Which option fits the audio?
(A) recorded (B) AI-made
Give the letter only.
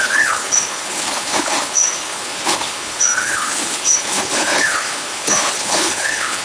B